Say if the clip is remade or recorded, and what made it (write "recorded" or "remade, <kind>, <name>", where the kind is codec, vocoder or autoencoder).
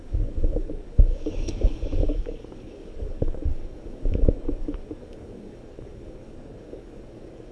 remade, codec, DAC